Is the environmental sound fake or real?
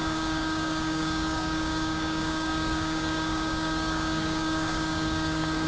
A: fake